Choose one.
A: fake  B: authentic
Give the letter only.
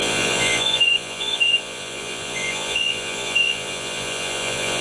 A